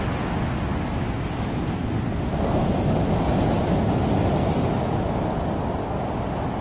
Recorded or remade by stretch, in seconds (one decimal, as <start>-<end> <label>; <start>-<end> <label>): 0.0-6.6 recorded